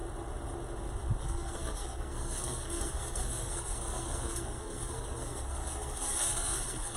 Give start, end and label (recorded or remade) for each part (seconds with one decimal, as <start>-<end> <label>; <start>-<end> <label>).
0.0-1.2 recorded; 1.2-7.0 remade